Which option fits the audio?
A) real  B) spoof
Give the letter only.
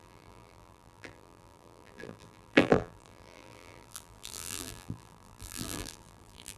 B